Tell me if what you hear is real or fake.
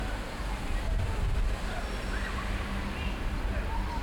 real